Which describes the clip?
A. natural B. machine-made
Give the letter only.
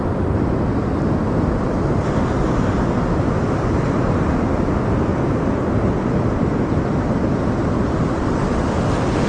A